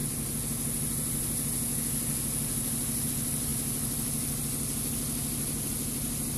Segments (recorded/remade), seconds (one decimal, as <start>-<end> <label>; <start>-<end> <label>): 0.0-6.4 recorded